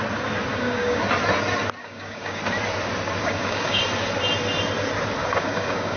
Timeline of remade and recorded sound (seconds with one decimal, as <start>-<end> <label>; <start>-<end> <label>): 0.0-0.5 recorded; 0.5-1.0 remade; 1.0-1.8 recorded; 1.8-2.4 remade; 2.4-3.2 recorded; 3.2-3.8 remade; 3.8-5.2 recorded; 5.2-6.0 remade